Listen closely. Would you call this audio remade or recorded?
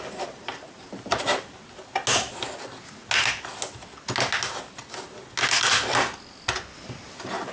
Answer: recorded